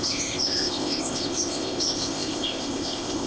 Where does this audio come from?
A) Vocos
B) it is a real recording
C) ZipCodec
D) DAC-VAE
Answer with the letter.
C